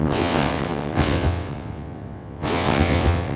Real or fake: fake